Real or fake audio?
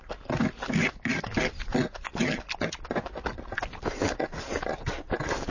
real